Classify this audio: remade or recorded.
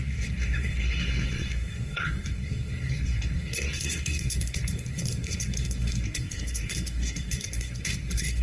remade